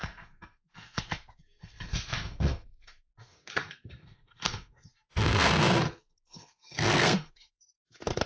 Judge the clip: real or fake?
fake